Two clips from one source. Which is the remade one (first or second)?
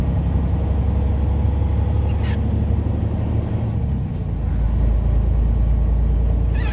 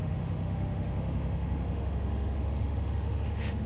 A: second